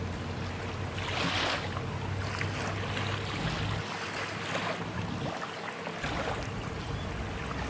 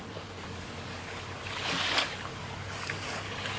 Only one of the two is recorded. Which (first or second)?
first